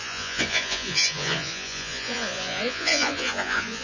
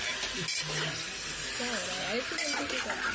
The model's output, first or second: first